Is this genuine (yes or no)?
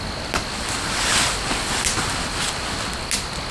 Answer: yes